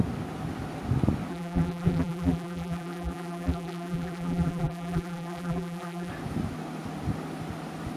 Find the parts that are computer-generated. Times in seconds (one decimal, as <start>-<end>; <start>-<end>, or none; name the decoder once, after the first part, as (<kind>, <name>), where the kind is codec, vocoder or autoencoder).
1.3-6.1 (vocoder, BigVGAN v2)